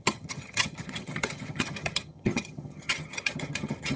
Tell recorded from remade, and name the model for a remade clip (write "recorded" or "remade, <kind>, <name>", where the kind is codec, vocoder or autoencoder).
remade, vocoder, HiFi-GAN